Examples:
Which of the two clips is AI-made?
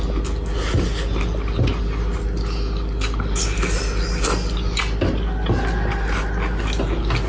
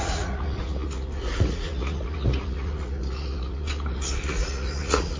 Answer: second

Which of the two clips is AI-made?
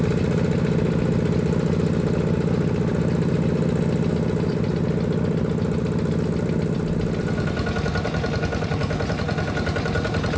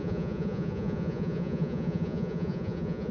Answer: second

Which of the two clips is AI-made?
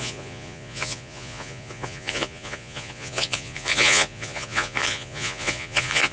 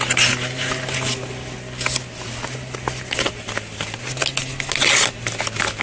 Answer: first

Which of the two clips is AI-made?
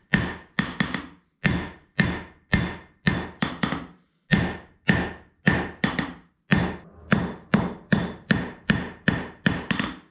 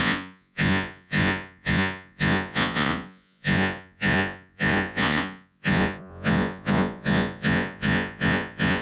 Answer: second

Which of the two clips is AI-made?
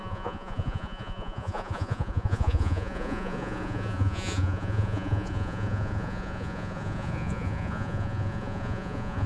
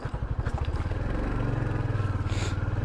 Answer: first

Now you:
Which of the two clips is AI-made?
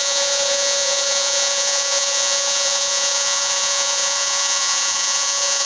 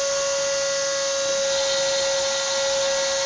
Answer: first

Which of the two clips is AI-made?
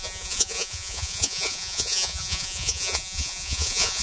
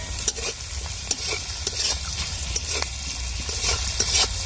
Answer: first